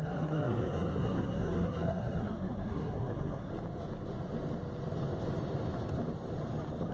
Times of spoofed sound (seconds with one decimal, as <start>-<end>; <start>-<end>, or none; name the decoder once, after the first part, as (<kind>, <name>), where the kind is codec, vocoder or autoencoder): 0.0-3.5 (codec, SNAC)